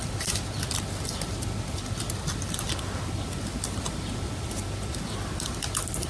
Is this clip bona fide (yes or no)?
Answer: yes